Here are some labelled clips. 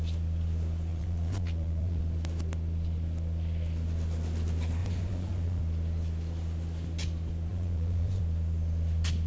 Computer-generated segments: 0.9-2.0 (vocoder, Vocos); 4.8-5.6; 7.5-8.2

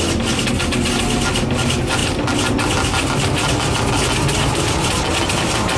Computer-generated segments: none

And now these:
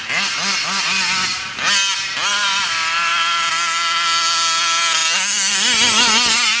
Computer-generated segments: none